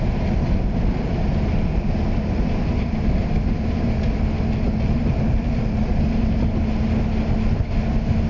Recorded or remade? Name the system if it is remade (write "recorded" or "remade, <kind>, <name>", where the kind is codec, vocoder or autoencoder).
recorded